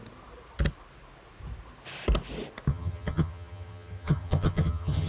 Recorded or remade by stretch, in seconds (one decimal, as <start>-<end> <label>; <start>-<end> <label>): 0.0-2.7 recorded; 2.7-5.1 remade